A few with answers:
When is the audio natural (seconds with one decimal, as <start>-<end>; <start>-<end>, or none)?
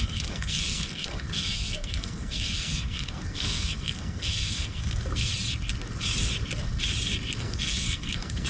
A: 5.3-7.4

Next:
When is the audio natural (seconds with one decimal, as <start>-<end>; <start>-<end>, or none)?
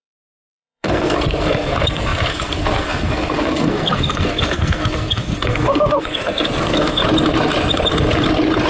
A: 7.0-8.7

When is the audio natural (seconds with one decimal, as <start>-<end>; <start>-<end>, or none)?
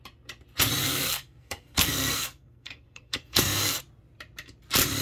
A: 0.0-0.8; 3.8-5.0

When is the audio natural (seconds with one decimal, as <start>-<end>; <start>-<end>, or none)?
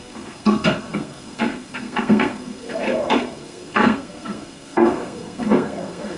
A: none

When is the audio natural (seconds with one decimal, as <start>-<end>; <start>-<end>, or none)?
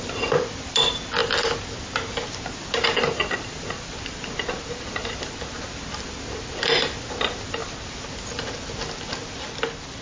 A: 0.0-10.0